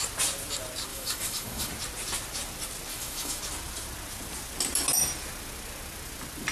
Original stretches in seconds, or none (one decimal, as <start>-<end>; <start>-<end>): 0.0-0.9; 1.7-2.9; 3.4-6.5